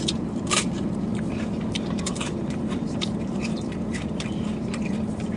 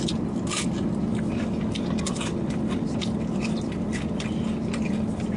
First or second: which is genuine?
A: second